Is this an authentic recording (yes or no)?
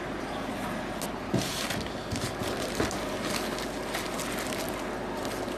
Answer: yes